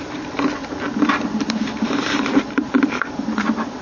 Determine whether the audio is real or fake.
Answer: fake